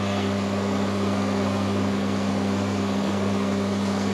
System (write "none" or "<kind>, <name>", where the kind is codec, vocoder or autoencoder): codec, SNAC